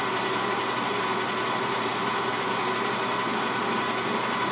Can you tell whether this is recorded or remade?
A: recorded